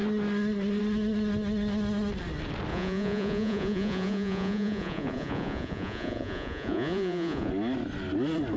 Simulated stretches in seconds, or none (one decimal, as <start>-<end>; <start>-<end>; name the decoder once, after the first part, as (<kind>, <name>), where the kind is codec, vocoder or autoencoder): 2.7-7.5 (vocoder, Vocos)